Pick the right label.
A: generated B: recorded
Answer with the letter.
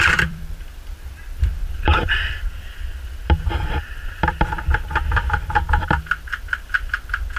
A